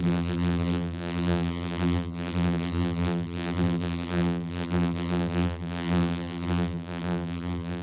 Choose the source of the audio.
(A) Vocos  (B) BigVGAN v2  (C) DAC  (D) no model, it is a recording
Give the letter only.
B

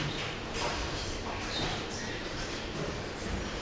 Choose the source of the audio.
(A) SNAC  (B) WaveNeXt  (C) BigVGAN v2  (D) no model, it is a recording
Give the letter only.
C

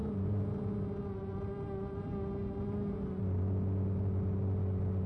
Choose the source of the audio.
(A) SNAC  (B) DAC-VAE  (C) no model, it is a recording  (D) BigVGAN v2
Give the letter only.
C